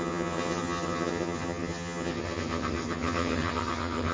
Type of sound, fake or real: fake